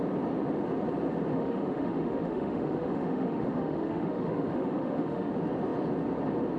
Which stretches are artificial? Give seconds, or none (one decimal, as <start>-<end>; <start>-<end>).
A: 1.3-5.3